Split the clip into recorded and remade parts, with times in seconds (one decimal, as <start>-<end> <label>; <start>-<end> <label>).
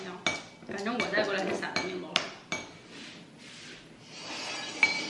0.0-5.1 recorded